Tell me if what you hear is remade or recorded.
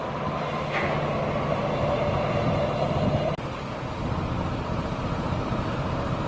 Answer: recorded